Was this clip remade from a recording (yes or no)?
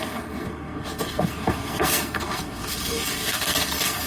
yes